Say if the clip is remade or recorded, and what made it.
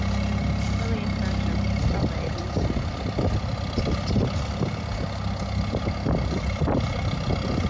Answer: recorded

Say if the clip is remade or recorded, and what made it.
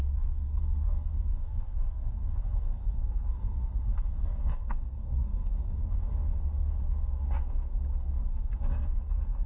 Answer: remade, codec, SNAC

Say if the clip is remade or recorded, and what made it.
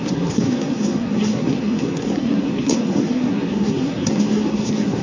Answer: remade, codec, SNAC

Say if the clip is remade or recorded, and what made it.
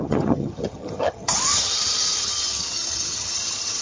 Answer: remade, vocoder, HiFi-GAN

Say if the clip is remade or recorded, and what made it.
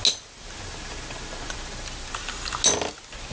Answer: recorded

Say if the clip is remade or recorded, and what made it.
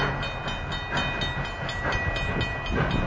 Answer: recorded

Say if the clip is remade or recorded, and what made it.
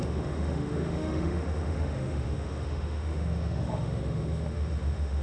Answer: remade, autoencoder, DAC-VAE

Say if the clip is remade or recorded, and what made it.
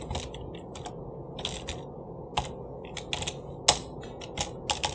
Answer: recorded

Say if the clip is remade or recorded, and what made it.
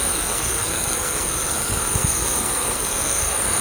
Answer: remade, codec, SNAC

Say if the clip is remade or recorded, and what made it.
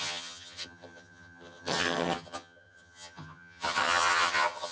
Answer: remade, vocoder, HiFi-GAN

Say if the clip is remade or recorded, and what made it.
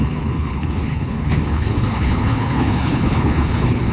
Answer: remade, codec, HILCodec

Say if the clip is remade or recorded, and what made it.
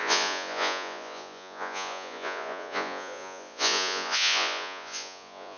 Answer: remade, vocoder, Vocos